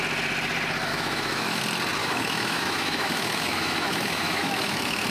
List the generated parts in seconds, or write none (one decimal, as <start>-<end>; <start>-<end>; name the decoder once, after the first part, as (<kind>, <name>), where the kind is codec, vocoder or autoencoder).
0.9-1.6 (autoencoder, DAC-VAE); 2.0-5.1